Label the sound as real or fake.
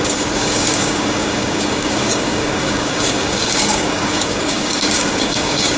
fake